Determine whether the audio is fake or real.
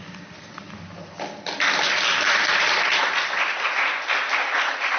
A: real